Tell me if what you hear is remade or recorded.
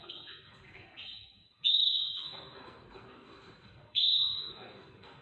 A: remade